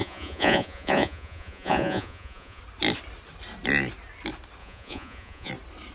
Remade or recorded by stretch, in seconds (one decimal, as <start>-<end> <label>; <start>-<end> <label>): 0.0-2.6 remade; 2.6-4.6 recorded; 4.6-5.5 remade; 5.5-5.9 recorded